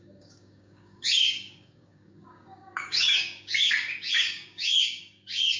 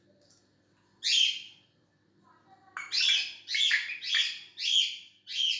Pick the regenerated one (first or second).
first